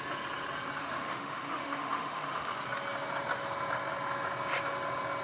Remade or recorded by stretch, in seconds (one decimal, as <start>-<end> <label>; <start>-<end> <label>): 0.0-0.8 recorded; 0.8-2.5 remade; 2.5-5.2 recorded

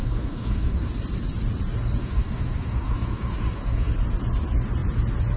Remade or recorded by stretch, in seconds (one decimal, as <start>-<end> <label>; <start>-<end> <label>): 0.0-0.9 remade; 0.9-2.0 recorded; 2.0-3.9 remade; 3.9-5.4 recorded

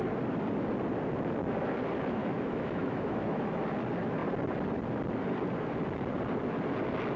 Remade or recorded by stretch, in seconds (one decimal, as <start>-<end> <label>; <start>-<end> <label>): 0.0-2.2 recorded; 2.2-3.6 remade; 3.6-7.2 recorded

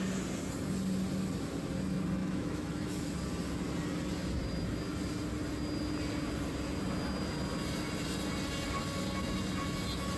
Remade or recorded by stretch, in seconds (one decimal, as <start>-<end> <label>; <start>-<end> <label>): 0.0-2.2 recorded; 2.2-3.1 remade; 3.1-10.2 recorded

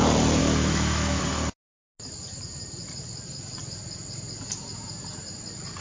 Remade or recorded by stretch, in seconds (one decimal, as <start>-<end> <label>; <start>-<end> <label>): 0.0-0.4 recorded; 0.4-1.2 remade; 1.2-5.8 recorded

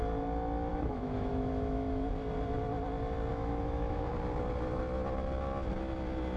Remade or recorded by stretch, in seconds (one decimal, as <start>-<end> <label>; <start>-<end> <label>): 0.0-0.7 recorded; 0.7-2.1 remade; 2.1-3.3 recorded; 3.3-4.1 remade; 4.1-6.4 recorded

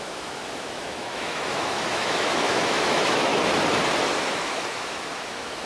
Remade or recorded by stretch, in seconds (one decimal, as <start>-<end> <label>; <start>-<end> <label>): 0.0-3.3 remade; 3.3-4.2 recorded; 4.2-5.7 remade

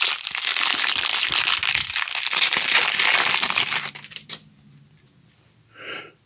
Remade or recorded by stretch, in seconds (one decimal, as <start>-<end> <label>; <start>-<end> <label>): 0.0-6.3 recorded